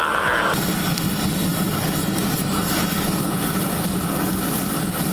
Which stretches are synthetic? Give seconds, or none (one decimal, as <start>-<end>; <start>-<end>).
0.9-1.5; 4.6-5.1